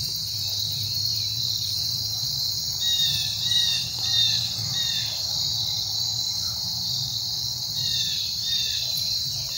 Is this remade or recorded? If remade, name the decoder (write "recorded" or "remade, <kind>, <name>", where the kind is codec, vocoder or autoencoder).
remade, vocoder, BigVGAN v2